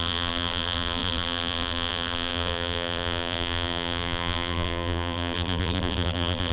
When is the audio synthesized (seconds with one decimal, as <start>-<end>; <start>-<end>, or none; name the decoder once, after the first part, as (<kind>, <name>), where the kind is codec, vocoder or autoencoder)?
0.0-6.5 (vocoder, BigVGAN v2)